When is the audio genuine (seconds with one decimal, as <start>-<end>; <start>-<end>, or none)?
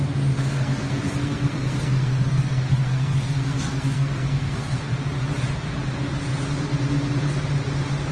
0.0-0.4; 4.9-8.1